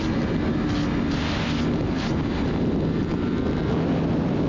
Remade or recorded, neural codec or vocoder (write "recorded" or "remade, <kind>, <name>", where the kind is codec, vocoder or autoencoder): recorded